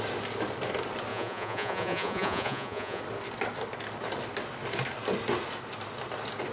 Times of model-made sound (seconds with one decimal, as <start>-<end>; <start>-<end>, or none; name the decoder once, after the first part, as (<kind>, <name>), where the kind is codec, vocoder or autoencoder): 1.1-3.0 (vocoder, Vocos)